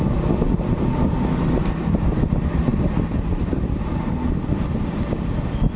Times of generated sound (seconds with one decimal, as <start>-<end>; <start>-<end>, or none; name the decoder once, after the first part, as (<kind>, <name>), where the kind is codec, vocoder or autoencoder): none